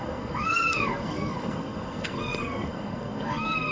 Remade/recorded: remade